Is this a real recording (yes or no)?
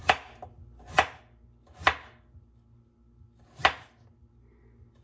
yes